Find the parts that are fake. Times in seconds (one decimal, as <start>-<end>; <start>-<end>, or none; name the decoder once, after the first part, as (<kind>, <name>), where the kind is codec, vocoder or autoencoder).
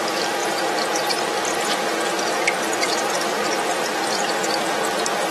0.0-0.4 (vocoder, BigVGAN v2); 1.6-3.4; 3.9-5.3